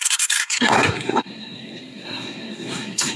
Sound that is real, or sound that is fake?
fake